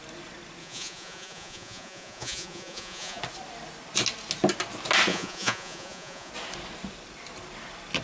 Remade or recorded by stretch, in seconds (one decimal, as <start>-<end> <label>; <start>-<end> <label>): 0.0-0.6 recorded; 0.6-3.2 remade; 3.2-5.1 recorded; 5.1-6.3 remade; 6.3-8.0 recorded